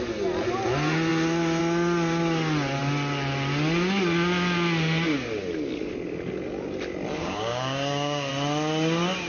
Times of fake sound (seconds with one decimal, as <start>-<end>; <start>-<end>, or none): 7.2-8.3